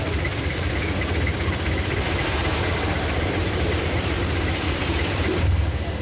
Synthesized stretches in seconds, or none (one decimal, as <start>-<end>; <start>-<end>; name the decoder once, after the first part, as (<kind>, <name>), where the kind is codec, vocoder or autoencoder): 2.4-5.6 (vocoder, BigVGAN v2)